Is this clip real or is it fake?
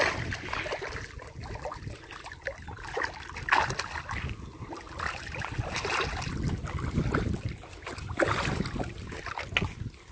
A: real